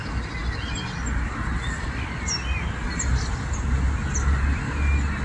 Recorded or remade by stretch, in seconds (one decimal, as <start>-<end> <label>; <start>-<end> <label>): 0.0-5.2 recorded

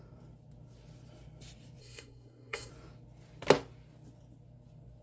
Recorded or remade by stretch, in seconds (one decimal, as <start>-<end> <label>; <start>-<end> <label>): 0.0-1.8 recorded; 1.8-2.7 remade; 2.7-5.0 recorded

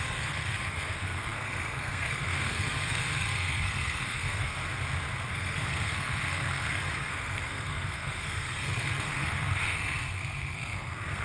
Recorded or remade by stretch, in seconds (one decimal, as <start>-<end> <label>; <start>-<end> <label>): 0.0-4.6 remade; 4.6-5.3 recorded; 5.3-11.2 remade

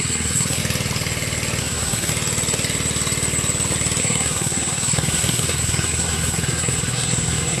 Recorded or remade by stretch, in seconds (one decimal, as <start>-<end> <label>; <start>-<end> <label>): 0.0-0.6 remade; 0.6-1.6 recorded; 1.6-2.1 remade; 2.1-4.0 recorded; 4.0-7.6 remade

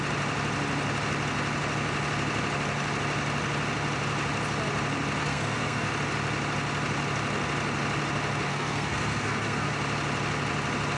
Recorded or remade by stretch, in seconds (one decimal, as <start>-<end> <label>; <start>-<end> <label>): 0.0-5.2 recorded; 5.2-5.9 remade; 5.9-8.5 recorded; 8.5-9.7 remade; 9.7-11.0 recorded

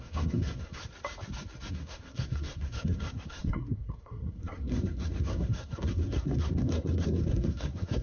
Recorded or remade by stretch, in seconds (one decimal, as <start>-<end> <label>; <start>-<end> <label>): 0.0-0.8 remade; 0.8-1.7 recorded; 1.7-8.0 remade

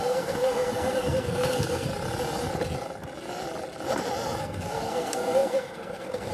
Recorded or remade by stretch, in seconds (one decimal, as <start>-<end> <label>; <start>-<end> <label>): 0.0-1.9 remade; 1.9-4.4 recorded; 4.4-6.3 remade